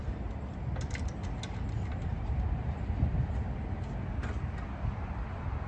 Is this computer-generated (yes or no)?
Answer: no